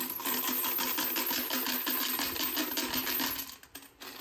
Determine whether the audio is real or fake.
real